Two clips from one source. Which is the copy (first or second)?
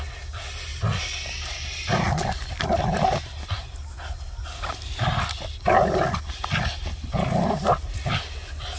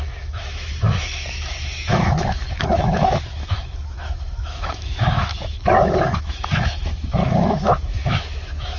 second